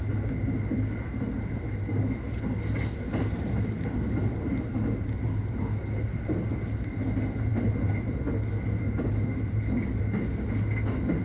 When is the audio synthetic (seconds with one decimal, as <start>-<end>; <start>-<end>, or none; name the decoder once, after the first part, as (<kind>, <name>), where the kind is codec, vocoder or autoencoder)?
none